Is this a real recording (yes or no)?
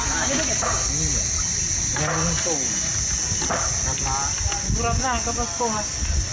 yes